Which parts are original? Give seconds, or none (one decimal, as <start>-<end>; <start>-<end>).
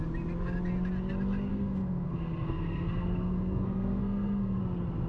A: 0.0-1.5; 4.6-5.1